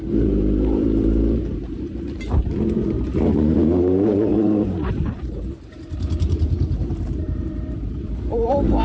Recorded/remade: remade